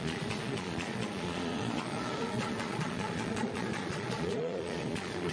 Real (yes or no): no